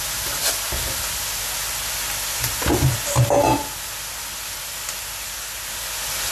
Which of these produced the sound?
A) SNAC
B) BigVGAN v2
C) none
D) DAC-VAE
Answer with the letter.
C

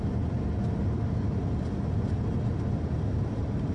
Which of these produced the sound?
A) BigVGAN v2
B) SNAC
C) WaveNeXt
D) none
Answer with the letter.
D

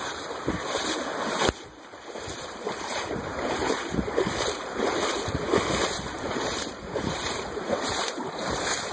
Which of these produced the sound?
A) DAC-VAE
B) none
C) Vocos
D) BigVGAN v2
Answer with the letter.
D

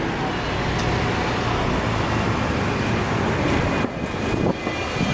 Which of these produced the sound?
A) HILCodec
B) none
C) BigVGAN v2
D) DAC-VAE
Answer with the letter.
B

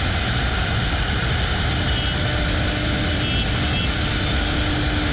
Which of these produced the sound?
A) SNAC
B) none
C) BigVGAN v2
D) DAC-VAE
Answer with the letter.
B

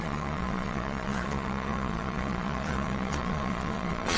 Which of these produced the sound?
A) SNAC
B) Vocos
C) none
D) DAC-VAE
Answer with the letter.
B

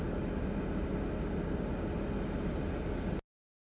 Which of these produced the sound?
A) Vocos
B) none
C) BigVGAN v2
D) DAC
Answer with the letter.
B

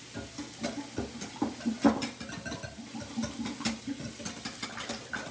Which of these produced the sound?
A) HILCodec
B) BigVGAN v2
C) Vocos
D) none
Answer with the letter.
D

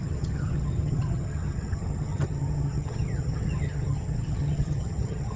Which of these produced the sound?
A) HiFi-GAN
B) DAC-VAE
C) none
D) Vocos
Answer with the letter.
A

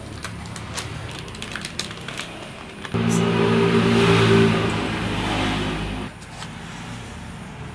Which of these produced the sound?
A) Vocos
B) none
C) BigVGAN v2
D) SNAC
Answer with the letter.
B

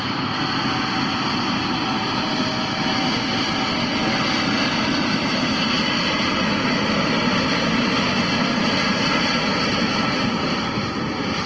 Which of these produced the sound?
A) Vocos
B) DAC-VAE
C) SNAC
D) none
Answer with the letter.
D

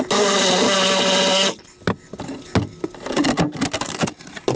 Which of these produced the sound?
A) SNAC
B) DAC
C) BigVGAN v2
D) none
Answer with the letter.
D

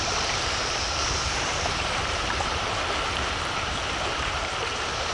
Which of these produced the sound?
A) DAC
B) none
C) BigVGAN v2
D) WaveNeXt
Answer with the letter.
C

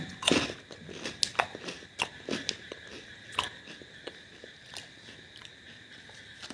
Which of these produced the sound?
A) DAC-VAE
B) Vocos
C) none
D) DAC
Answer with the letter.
C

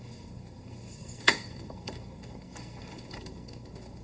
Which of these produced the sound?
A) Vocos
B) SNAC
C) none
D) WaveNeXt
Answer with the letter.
B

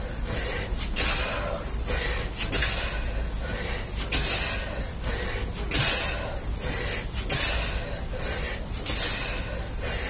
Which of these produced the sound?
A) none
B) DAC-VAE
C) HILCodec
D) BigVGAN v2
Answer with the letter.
A